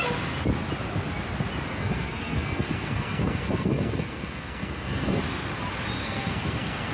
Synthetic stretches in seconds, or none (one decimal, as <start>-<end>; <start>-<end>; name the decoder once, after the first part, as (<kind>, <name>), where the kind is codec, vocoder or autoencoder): 1.7-5.2 (codec, SNAC); 6.0-6.9